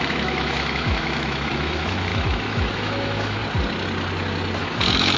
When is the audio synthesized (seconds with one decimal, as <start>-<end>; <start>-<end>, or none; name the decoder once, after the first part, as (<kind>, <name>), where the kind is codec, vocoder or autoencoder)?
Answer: 0.0-3.4 (autoencoder, DAC-VAE); 4.6-5.2